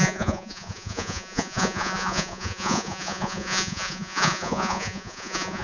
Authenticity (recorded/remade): remade